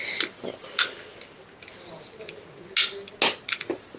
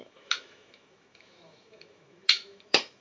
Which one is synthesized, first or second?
second